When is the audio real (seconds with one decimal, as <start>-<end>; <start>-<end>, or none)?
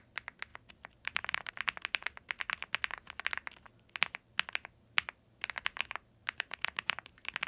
0.0-0.5; 1.5-6.2; 7.1-7.5